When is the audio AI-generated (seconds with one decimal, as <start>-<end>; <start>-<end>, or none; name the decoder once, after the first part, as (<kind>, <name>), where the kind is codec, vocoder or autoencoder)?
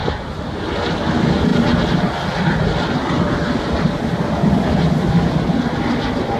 none